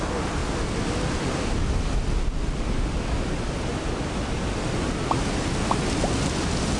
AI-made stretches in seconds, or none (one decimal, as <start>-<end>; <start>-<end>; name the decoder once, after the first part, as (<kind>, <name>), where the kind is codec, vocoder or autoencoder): none